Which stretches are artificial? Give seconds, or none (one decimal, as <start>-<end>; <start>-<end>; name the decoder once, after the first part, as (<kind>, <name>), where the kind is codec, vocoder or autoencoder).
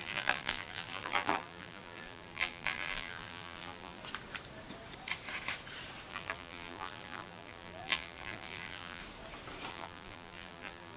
0.0-4.0 (vocoder, BigVGAN v2); 6.1-9.0; 9.7-11.0